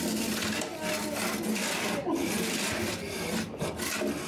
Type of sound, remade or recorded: recorded